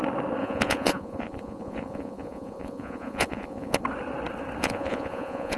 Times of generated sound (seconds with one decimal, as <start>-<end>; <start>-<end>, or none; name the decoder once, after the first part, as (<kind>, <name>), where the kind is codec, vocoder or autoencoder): 0.4-3.8 (vocoder, Vocos); 4.6-5.6